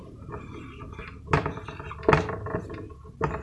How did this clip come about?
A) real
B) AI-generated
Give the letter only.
A